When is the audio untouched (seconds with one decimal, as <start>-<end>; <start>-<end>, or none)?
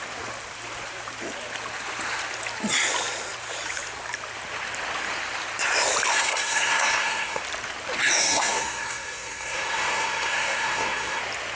0.0-6.1; 7.4-8.2; 11.2-11.6